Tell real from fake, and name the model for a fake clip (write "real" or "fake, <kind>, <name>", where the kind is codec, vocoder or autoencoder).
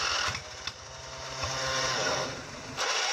real